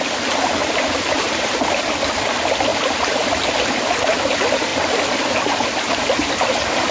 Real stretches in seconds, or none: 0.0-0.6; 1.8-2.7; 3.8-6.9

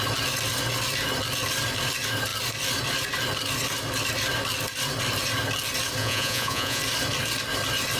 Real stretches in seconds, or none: 0.0-6.0; 6.8-8.0

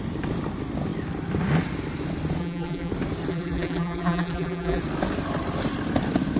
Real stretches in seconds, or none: 0.0-2.4; 2.9-3.3; 4.8-6.4

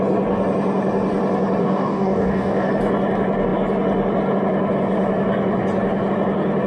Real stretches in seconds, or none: 0.0-1.6; 2.7-6.7

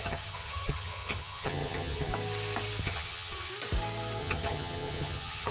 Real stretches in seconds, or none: 2.1-2.8; 3.5-4.2